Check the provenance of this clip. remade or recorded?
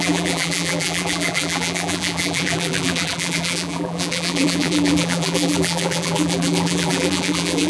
remade